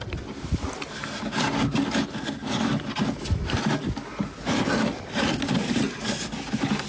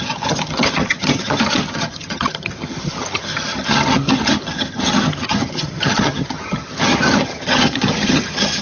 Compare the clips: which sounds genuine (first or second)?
first